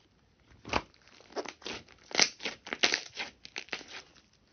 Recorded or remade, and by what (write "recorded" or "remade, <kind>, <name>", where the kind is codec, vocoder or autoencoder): recorded